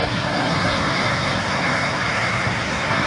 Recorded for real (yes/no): no